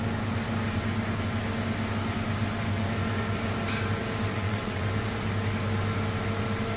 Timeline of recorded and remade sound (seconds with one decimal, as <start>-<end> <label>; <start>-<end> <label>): 0.0-4.3 recorded; 4.3-4.8 remade; 4.8-6.8 recorded